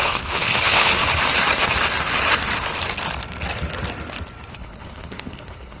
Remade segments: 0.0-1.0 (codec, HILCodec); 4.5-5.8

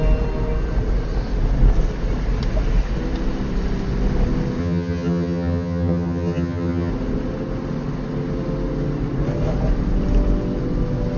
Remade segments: 4.6-6.9 (vocoder, HiFi-GAN)

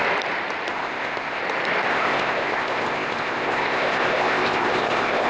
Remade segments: 0.7-1.4 (codec, ZipCodec); 1.9-5.3

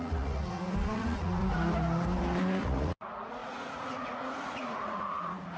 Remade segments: 0.0-1.4 (vocoder, Vocos); 2.4-5.6

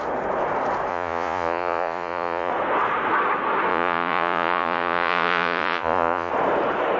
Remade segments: 0.9-2.5 (vocoder, Vocos); 3.7-6.3

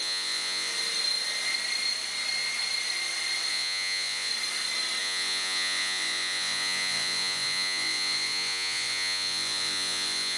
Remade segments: 0.0-0.7 (vocoder, Vocos); 3.5-4.3; 5.0-10.4